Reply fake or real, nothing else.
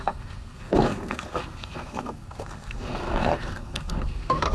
fake